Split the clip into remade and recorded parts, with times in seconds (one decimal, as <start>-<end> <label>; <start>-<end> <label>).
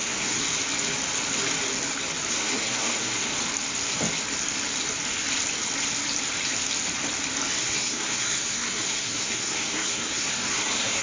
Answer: 0.0-0.4 remade; 0.4-2.3 recorded; 2.3-3.3 remade; 3.3-7.6 recorded; 7.6-11.0 remade